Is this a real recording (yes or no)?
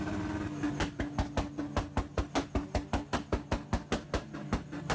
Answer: yes